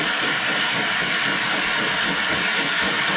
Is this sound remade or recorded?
recorded